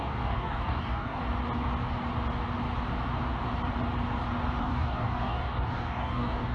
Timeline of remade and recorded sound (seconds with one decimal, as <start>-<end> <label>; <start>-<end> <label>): 0.0-1.2 remade; 1.2-4.6 recorded; 4.6-6.5 remade